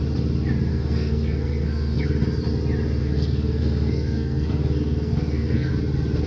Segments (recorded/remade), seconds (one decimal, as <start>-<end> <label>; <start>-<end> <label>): 0.0-0.7 recorded; 0.7-2.0 remade; 2.0-3.0 recorded; 3.0-5.7 remade; 5.7-6.3 recorded